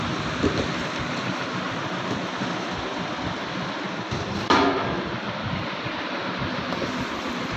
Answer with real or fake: fake